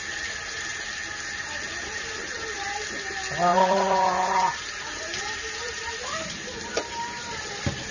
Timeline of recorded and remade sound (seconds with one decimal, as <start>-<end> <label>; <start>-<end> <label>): 0.0-3.5 recorded; 3.5-5.9 remade; 5.9-6.8 recorded; 6.8-7.4 remade; 7.4-7.9 recorded